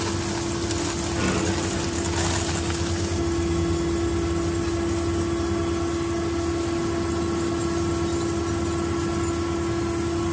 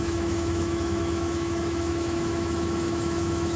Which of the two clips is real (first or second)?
first